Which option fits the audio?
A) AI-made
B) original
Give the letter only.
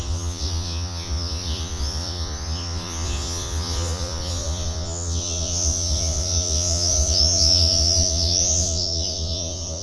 A